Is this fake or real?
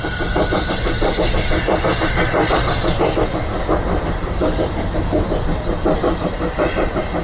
real